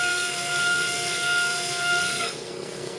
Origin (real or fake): fake